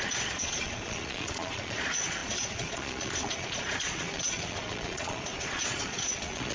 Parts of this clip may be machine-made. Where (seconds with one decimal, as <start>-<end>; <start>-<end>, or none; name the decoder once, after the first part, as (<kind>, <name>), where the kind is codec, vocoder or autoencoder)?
0.0-6.5 (vocoder, Vocos)